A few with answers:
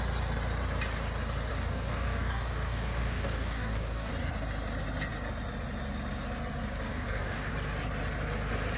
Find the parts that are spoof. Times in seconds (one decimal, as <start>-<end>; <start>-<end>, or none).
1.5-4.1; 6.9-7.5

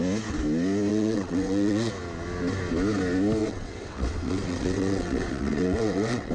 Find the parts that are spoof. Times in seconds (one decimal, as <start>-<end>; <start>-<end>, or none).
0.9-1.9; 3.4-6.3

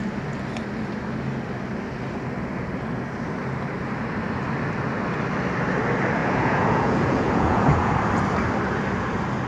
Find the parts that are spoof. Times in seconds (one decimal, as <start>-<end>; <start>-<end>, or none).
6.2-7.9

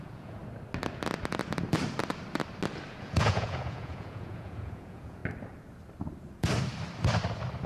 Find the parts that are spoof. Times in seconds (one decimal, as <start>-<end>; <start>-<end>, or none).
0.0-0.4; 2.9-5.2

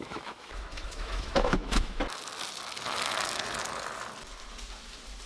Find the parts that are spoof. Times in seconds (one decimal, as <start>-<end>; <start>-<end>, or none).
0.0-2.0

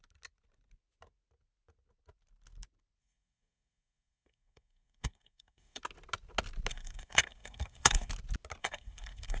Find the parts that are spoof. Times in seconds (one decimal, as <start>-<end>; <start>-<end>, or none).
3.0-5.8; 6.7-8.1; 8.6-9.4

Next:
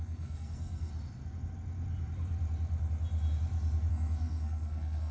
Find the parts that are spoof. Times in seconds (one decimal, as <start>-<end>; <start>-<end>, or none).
0.0-0.9; 3.9-5.1